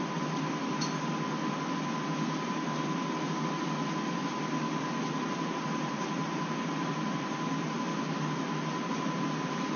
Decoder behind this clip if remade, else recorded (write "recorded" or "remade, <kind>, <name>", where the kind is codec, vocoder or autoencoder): recorded